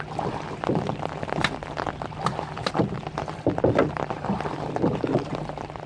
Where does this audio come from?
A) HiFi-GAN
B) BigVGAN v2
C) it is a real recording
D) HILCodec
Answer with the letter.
C